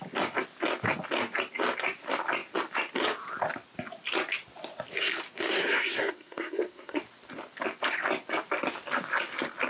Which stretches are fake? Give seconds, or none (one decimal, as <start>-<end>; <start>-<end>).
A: 5.5-7.0